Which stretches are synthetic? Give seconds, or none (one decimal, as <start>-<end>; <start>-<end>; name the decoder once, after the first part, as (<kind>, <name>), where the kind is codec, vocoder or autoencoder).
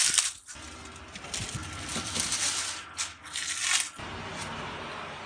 1.6-3.7 (vocoder, BigVGAN v2)